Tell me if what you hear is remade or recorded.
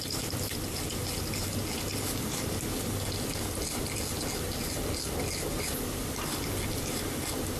recorded